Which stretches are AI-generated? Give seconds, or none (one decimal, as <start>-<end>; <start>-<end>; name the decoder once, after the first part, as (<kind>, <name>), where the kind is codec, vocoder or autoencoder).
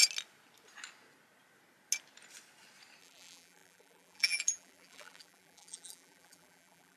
3.0-7.0 (vocoder, BigVGAN v2)